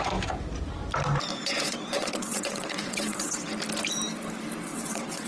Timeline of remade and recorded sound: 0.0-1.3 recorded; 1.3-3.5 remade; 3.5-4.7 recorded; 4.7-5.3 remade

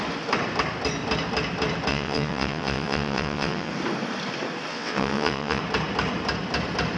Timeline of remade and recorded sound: 0.0-1.9 recorded; 1.9-3.7 remade; 3.7-4.7 recorded; 4.7-5.6 remade; 5.6-7.0 recorded

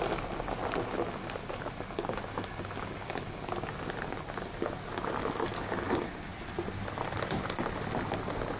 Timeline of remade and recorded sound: 0.0-8.6 recorded

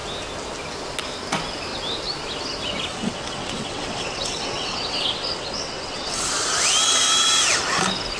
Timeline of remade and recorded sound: 0.0-2.9 recorded; 2.9-6.3 remade; 6.3-8.2 recorded